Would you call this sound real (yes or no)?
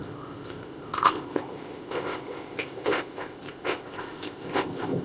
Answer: no